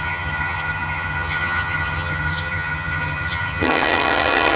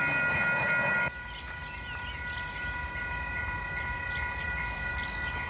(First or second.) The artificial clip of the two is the first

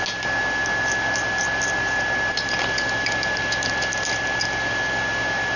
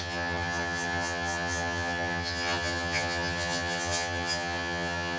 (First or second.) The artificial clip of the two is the second